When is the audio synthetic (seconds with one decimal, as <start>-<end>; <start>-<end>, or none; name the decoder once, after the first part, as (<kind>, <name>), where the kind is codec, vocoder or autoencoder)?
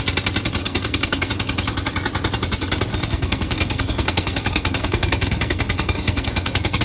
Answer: 0.6-1.3 (codec, SNAC); 2.9-6.8